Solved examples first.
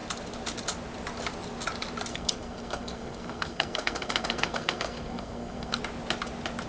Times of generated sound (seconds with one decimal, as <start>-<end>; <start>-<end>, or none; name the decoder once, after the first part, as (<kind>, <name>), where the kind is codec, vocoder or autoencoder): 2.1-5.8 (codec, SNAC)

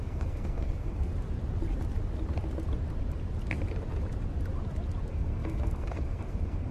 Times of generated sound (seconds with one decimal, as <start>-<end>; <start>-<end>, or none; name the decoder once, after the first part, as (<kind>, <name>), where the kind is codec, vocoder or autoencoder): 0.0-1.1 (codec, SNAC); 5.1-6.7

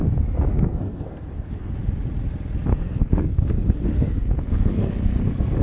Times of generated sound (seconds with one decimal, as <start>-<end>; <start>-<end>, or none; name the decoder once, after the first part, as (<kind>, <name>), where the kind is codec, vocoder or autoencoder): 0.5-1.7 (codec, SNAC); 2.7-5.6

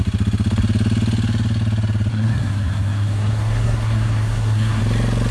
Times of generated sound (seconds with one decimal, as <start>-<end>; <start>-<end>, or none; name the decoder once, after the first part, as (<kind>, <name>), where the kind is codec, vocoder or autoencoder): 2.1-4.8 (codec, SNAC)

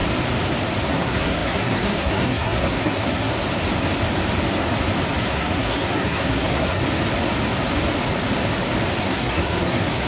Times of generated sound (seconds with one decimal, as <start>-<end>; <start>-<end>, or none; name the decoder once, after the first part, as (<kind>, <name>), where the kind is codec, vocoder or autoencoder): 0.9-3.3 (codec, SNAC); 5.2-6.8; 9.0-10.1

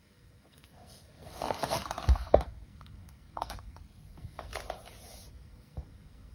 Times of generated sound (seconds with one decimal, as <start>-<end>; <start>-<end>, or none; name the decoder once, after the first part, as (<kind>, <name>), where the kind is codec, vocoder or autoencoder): 0.0-4.5 (codec, SNAC); 5.3-6.3

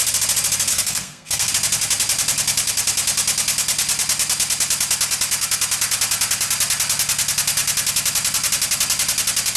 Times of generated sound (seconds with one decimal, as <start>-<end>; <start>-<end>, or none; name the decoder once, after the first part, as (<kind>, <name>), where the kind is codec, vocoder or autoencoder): 0.7-1.5 (codec, SNAC)

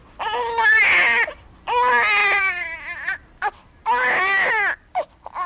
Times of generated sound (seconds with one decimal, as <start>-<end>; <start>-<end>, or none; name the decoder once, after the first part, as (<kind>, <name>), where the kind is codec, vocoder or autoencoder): none